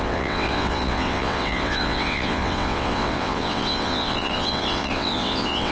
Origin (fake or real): fake